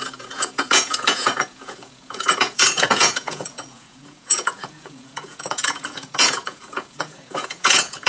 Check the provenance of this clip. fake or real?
fake